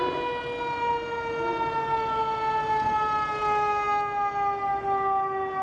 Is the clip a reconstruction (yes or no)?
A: no